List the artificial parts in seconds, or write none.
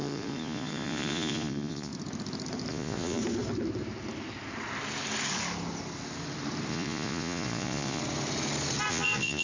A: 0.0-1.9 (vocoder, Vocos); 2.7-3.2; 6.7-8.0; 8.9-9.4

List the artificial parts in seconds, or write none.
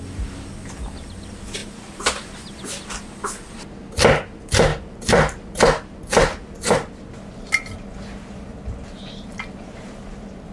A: 4.7-5.6 (vocoder, BigVGAN v2); 6.3-6.9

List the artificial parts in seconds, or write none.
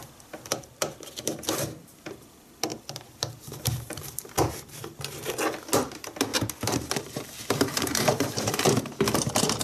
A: 0.5-1.9 (vocoder, BigVGAN v2); 2.7-5.3; 6.3-9.6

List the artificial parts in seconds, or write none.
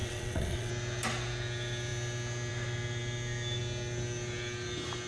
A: 0.0-0.7 (vocoder, WaveNeXt)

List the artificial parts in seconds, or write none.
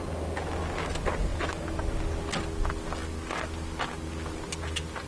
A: none